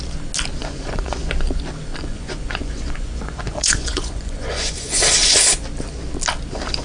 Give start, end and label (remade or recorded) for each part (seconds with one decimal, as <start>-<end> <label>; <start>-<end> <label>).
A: 0.0-0.6 recorded; 0.6-1.3 remade; 1.3-1.9 recorded; 1.9-5.0 remade; 5.0-6.8 recorded